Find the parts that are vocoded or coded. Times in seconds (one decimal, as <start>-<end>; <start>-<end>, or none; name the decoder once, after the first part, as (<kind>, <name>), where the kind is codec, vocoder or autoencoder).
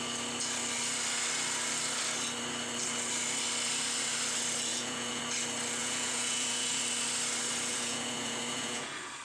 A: 4.7-5.2 (vocoder, Vocos); 5.8-6.8; 7.7-9.2